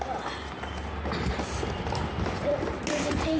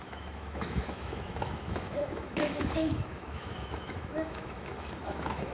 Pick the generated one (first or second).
second